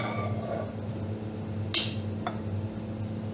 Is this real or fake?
real